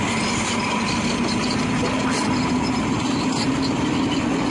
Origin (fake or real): real